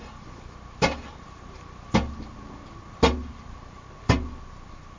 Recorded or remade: recorded